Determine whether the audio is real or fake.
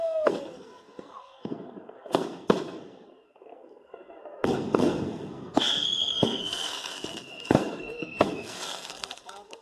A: fake